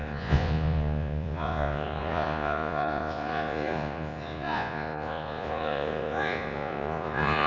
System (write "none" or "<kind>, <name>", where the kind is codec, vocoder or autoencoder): vocoder, Vocos